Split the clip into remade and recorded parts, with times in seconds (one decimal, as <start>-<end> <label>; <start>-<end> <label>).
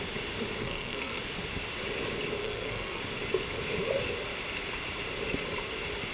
0.0-0.6 recorded; 0.6-1.2 remade; 1.2-2.4 recorded; 2.4-3.0 remade; 3.0-6.1 recorded